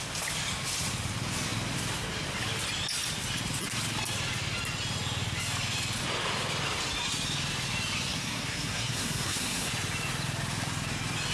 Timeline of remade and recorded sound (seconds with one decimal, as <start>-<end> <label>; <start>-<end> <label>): 0.0-8.1 recorded; 8.1-9.7 remade; 9.7-11.3 recorded